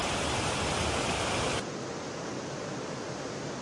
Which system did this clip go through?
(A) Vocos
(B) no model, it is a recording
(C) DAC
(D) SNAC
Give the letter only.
B